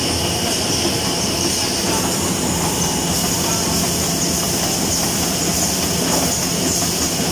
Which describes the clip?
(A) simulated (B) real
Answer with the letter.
B